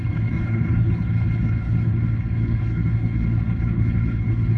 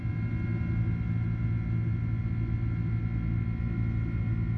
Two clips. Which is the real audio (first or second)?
second